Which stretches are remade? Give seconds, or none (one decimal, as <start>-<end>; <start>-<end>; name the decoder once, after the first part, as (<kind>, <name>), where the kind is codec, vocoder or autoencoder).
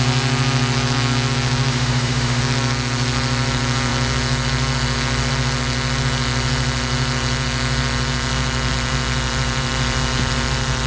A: 1.7-2.4 (autoencoder, DAC-VAE)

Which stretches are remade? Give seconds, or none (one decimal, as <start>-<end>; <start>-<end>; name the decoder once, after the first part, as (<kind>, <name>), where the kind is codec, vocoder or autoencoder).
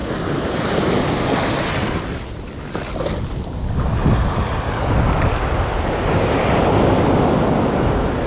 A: none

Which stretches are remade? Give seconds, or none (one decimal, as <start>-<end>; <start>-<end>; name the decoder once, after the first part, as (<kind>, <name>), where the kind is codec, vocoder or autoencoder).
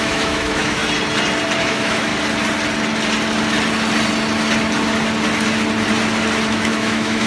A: 0.0-0.8 (autoencoder, DAC-VAE); 1.6-2.1; 6.5-7.3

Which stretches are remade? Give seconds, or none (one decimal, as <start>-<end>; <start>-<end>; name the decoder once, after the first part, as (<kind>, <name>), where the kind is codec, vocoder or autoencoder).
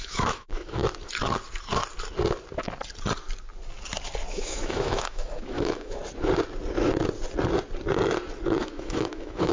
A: 0.0-0.8 (autoencoder, DAC-VAE); 4.3-6.0; 8.6-9.5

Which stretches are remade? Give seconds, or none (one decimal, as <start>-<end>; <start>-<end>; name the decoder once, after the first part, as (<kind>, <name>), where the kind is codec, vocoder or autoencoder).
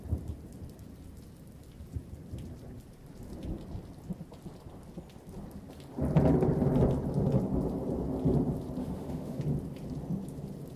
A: 8.8-9.4 (autoencoder, DAC-VAE)